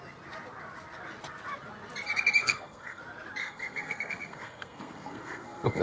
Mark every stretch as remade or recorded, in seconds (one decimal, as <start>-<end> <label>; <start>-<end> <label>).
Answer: 0.0-2.4 recorded; 2.4-3.0 remade; 3.0-3.4 recorded; 3.4-5.8 remade